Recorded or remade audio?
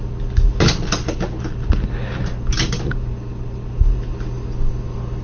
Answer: recorded